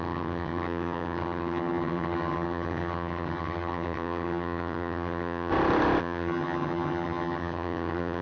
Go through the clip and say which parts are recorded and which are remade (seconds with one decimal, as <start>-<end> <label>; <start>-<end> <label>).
0.0-5.5 remade; 5.5-6.0 recorded; 6.0-8.2 remade